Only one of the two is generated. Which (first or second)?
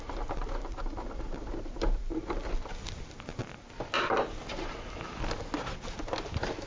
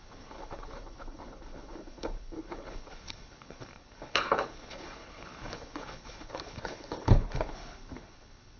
second